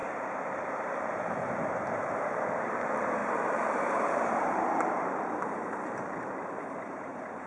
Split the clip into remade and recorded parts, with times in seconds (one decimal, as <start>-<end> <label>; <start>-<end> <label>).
0.0-7.5 remade